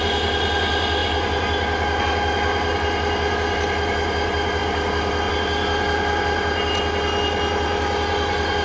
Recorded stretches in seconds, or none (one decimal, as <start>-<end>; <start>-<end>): 0.0-8.6